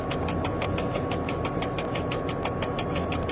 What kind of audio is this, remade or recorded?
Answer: recorded